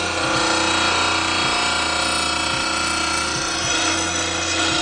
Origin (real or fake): real